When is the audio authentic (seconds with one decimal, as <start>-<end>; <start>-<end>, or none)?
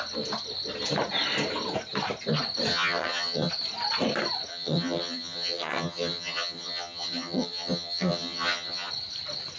0.0-2.7; 3.5-4.5; 8.9-9.6